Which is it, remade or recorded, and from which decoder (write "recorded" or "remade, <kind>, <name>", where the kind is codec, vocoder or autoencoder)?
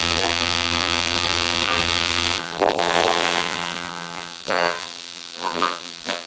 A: remade, vocoder, BigVGAN v2